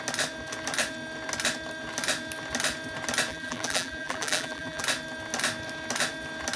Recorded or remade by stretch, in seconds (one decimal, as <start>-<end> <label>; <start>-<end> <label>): 0.0-3.3 recorded; 3.3-4.8 remade; 4.8-6.6 recorded